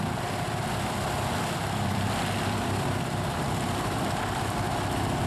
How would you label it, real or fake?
fake